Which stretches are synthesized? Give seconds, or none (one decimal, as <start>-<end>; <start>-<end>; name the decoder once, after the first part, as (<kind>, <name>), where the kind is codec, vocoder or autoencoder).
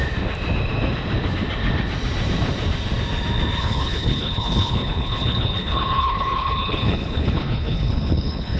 3.6-8.6 (codec, HILCodec)